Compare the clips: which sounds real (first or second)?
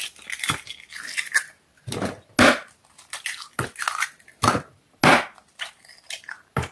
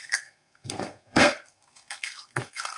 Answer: first